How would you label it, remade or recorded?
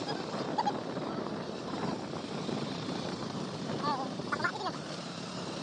remade